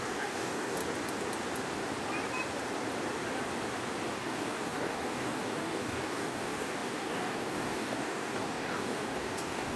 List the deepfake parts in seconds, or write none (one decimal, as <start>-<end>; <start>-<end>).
0.0-0.8; 4.1-9.8